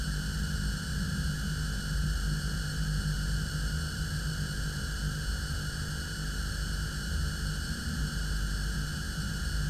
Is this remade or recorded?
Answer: recorded